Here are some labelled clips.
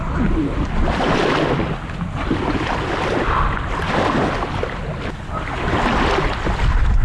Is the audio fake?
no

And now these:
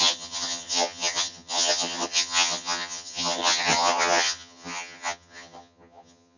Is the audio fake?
yes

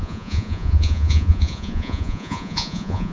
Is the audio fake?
yes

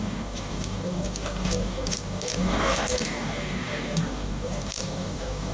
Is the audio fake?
yes